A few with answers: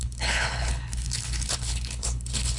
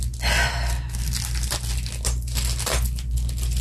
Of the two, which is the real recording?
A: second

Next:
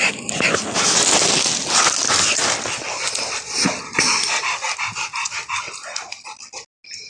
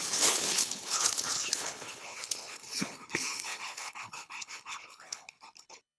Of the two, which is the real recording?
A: first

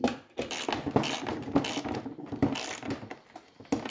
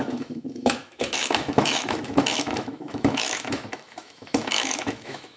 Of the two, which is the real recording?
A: first